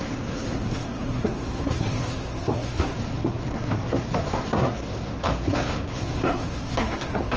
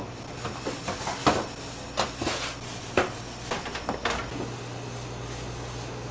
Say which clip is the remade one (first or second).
first